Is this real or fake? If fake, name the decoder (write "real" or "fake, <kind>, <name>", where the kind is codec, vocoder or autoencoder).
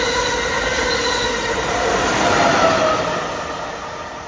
real